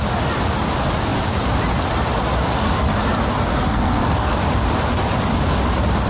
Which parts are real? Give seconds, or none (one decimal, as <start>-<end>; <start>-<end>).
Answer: 0.0-3.5; 4.3-6.1